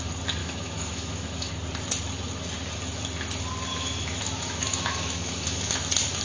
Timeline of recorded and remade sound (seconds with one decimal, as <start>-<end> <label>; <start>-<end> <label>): 0.0-0.4 recorded; 0.4-1.5 remade; 1.5-3.7 recorded; 3.7-5.7 remade; 5.7-6.2 recorded